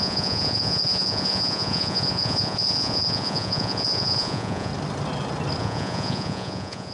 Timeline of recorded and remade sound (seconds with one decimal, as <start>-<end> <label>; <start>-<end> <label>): 0.0-4.7 remade; 4.7-5.6 recorded; 5.6-6.9 remade